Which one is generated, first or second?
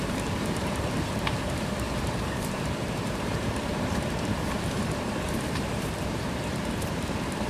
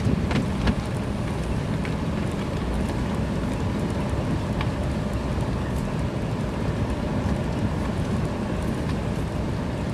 first